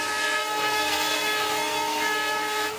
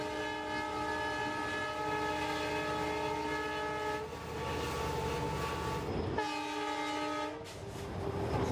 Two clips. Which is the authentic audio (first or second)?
second